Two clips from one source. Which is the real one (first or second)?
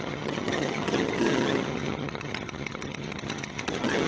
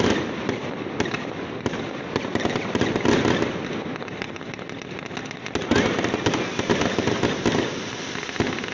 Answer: second